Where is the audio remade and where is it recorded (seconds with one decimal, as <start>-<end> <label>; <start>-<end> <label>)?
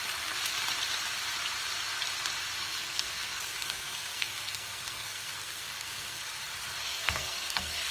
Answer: 0.0-2.6 recorded; 2.6-6.2 remade; 6.2-6.8 recorded; 6.8-7.9 remade